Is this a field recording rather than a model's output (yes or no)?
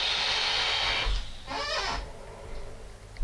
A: yes